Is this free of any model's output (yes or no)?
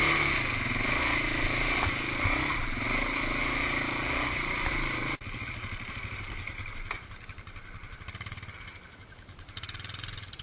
no